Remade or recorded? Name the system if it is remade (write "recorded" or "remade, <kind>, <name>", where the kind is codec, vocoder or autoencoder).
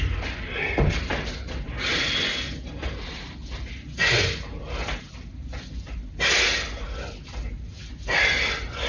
recorded